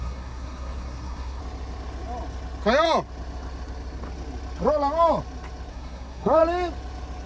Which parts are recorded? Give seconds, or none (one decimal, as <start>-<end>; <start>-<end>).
1.4-5.7; 6.4-7.3